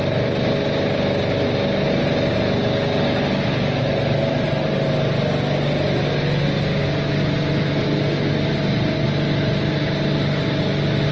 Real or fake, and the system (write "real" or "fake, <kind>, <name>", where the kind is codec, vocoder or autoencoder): real